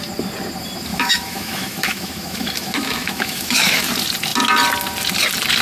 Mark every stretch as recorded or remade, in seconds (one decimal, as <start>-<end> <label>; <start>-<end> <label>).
0.0-0.9 recorded; 0.9-3.9 remade; 3.9-5.6 recorded